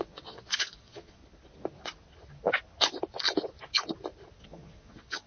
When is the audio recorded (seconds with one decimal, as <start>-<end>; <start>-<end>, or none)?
1.2-4.4

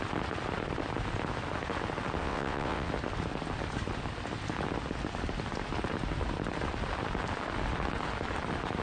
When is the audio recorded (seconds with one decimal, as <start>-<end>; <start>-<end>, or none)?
0.0-2.2; 2.9-8.8

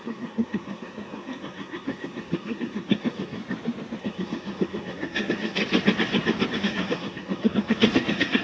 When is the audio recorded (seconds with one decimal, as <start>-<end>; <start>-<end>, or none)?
3.4-4.0; 5.6-6.6

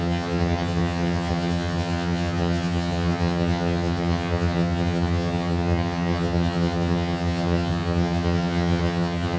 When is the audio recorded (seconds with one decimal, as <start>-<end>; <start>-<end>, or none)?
none

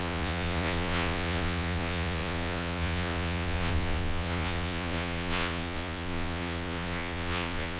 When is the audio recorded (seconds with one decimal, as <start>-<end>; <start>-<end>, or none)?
none